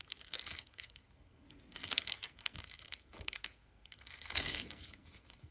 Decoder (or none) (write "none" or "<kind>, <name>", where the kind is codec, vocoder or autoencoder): codec, SNAC